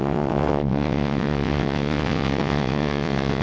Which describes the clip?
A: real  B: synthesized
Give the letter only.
B